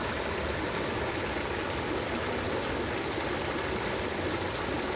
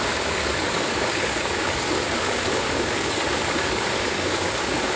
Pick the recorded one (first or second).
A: first